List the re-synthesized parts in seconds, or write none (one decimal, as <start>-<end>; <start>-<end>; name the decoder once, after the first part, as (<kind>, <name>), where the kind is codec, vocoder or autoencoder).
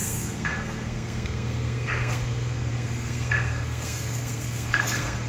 0.0-5.3 (codec, SNAC)